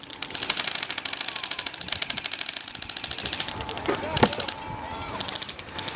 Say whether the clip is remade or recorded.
remade